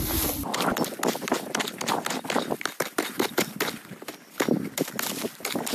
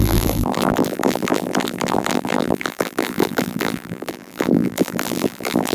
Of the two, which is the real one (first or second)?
first